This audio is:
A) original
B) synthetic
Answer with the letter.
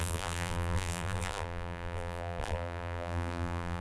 B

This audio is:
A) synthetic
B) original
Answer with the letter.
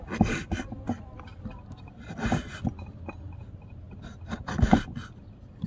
B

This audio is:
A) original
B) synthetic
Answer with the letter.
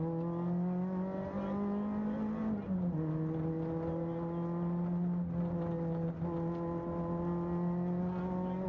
A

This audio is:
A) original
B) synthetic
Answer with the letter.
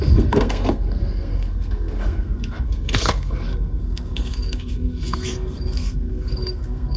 B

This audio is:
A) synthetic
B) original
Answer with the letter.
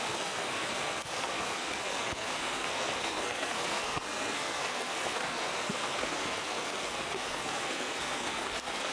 A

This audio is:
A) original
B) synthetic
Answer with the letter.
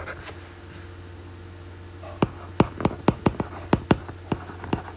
A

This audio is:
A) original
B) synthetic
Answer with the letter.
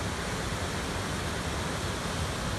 A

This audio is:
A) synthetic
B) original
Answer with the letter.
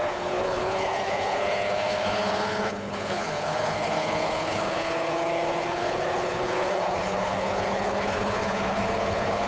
A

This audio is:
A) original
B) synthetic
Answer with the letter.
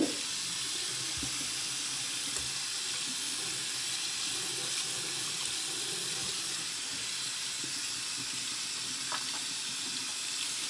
A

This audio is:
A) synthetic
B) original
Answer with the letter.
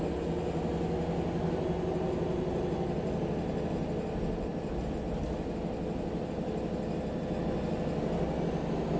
B